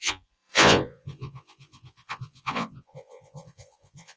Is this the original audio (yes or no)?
no